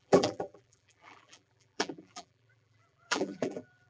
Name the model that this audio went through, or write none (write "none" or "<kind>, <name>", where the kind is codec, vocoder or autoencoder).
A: vocoder, BigVGAN v2